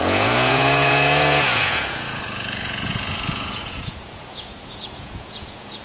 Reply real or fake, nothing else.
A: fake